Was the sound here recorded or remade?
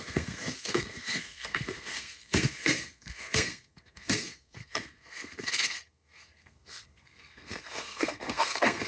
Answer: remade